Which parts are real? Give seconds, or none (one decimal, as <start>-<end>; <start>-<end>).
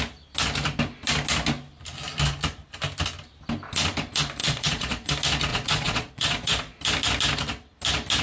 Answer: 0.0-4.4; 5.1-5.5; 6.8-8.2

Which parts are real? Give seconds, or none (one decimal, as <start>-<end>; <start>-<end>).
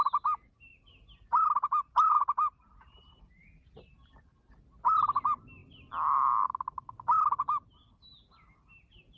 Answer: 0.0-0.7; 3.4-9.2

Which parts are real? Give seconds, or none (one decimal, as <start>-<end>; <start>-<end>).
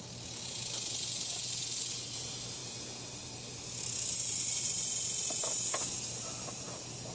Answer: 0.0-7.1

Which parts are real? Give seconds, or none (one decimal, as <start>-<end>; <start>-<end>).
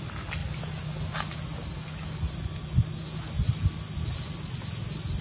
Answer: 0.0-5.2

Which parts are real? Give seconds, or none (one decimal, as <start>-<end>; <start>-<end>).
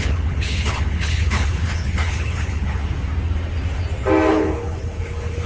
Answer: 2.8-4.3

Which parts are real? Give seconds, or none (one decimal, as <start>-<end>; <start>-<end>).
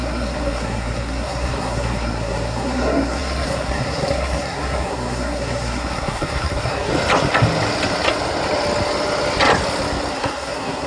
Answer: 6.9-10.1